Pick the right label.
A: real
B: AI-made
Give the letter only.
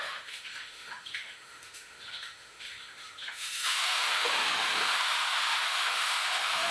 B